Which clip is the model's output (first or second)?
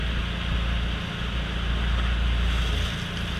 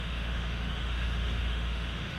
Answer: second